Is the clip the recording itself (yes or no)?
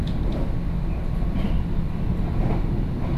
yes